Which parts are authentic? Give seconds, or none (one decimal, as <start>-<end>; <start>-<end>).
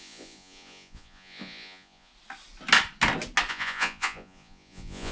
2.1-3.5